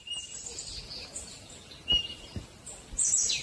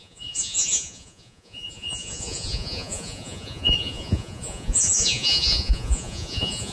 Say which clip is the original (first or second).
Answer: first